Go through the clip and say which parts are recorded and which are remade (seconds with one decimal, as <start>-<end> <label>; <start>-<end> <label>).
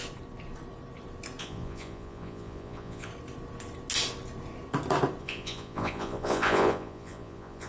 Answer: 0.0-1.4 recorded; 1.4-3.1 remade; 3.1-5.2 recorded; 5.2-7.7 remade